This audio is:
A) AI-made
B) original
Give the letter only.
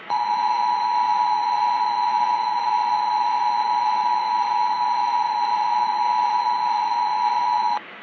A